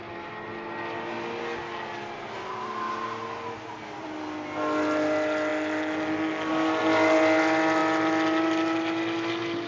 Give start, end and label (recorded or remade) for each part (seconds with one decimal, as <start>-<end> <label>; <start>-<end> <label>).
0.0-9.7 recorded